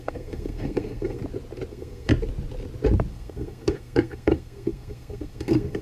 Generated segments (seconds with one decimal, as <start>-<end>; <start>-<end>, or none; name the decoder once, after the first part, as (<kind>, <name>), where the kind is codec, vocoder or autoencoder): 0.0-1.2 (codec, SNAC); 1.7-2.1; 3.1-5.8